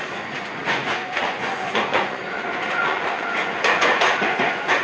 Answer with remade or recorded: remade